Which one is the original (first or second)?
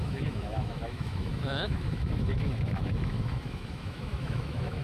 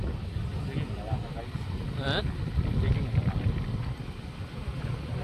second